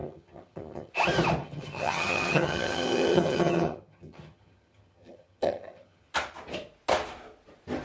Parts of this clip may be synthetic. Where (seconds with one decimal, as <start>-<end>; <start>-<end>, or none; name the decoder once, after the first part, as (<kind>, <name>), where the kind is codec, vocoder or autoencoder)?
0.0-0.9 (vocoder, HiFi-GAN); 1.4-6.1